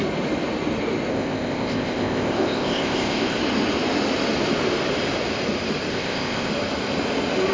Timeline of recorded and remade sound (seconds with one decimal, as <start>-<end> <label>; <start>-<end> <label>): 0.0-1.1 recorded; 1.1-3.4 remade; 3.4-5.9 recorded; 5.9-6.5 remade; 6.5-7.5 recorded